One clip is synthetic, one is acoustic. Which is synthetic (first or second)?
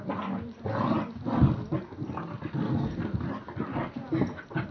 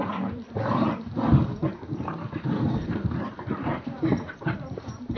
second